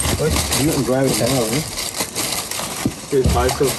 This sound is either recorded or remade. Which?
recorded